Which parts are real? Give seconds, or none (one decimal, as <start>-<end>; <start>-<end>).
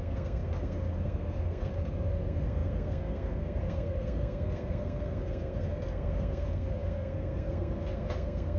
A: none